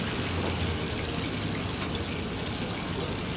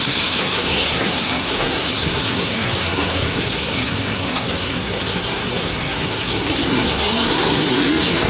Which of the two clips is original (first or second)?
first